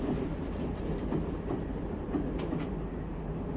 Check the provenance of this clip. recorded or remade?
recorded